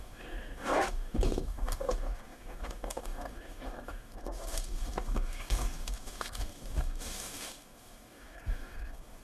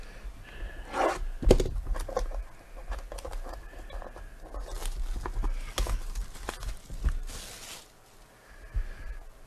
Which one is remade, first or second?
first